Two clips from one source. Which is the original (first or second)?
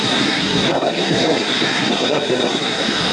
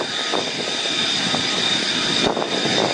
second